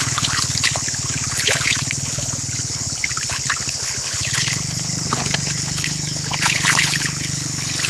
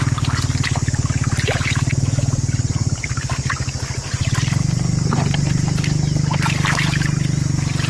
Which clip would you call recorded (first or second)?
second